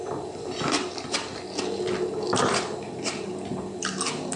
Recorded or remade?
recorded